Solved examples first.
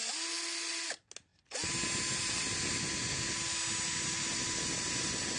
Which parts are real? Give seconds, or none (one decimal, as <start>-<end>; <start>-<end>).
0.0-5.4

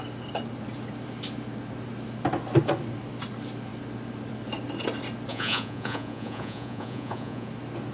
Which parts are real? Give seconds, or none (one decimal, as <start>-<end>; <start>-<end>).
0.0-5.3; 7.5-7.9

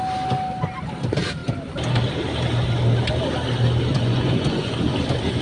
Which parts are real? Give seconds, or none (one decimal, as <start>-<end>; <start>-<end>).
0.0-3.9; 4.7-5.4

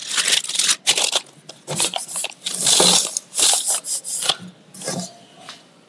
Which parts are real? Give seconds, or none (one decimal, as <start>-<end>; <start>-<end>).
0.0-1.5; 2.2-5.5

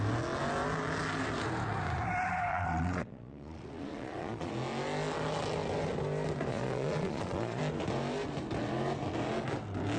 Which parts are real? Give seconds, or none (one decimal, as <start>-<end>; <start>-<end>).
0.0-2.5; 4.5-6.5; 7.6-10.0